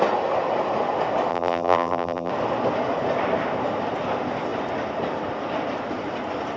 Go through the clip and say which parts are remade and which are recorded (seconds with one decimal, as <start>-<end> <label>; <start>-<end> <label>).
0.0-1.3 recorded; 1.3-2.3 remade; 2.3-6.6 recorded